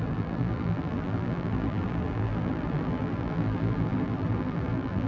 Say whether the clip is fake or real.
fake